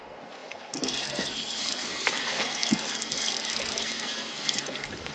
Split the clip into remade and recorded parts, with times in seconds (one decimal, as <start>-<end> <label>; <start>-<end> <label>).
0.0-5.1 remade